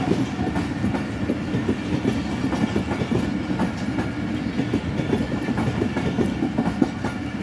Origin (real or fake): real